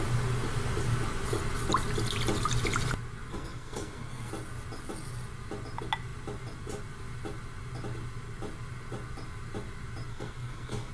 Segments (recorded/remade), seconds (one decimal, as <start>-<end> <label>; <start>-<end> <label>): 0.0-3.3 recorded; 3.3-4.3 remade; 4.3-10.1 recorded; 10.1-10.9 remade